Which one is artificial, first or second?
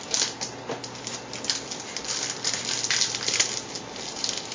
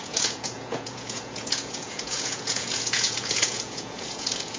second